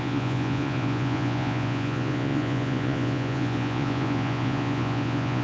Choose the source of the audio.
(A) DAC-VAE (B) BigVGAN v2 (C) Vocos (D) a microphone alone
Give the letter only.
C